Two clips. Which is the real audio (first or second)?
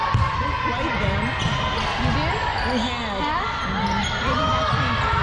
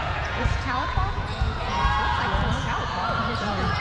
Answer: first